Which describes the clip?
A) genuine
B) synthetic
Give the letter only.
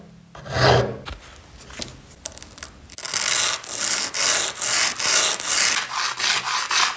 A